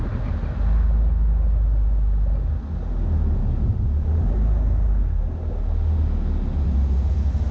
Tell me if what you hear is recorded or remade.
recorded